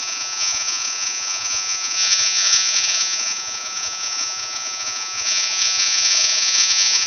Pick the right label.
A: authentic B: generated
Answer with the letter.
B